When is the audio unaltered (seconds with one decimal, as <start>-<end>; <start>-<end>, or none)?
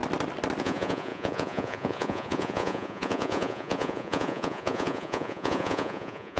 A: 0.0-0.6